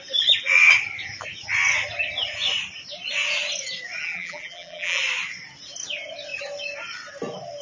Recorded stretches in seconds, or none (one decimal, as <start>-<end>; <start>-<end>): 0.0-4.0; 5.0-7.6